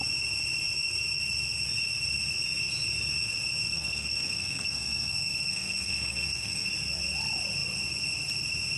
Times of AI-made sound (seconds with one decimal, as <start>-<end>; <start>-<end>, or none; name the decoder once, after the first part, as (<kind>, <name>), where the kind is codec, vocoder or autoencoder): 3.7-6.7 (codec, SNAC)